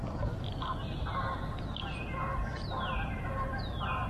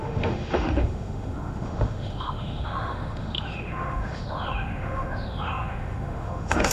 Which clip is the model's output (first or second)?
second